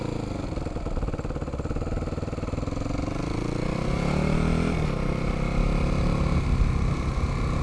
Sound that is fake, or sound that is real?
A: real